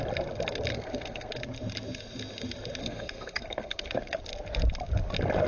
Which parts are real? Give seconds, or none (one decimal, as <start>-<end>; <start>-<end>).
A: 0.0-0.7; 1.3-2.8; 4.2-5.5